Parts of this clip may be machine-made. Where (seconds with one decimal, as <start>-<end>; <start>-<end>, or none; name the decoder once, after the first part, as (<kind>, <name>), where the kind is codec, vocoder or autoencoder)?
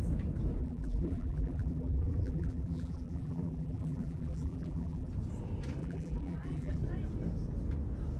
0.6-5.1 (vocoder, BigVGAN v2); 5.8-6.8